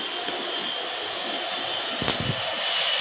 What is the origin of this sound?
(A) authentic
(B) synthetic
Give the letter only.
A